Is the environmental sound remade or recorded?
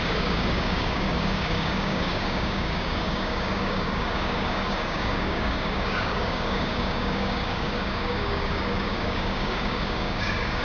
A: remade